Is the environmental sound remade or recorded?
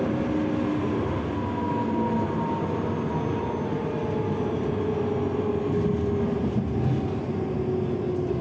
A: recorded